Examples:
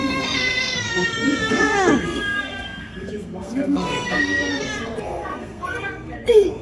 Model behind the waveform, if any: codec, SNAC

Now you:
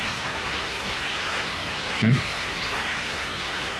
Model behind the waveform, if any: codec, SNAC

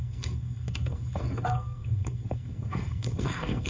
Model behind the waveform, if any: codec, SNAC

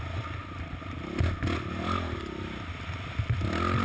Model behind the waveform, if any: none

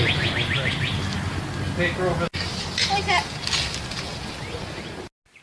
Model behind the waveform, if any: none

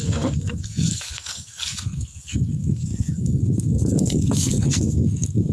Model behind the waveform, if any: codec, SNAC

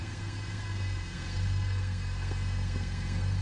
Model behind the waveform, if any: codec, SNAC